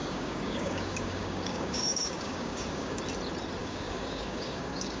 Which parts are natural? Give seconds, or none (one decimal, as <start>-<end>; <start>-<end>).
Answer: 3.0-3.6